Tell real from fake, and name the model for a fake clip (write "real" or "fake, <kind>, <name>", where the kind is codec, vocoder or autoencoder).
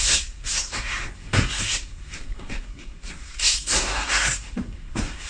fake, codec, SNAC